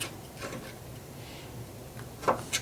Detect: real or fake real